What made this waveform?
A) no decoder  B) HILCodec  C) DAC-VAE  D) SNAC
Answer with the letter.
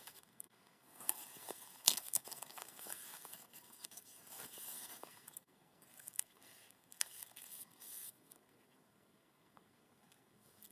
D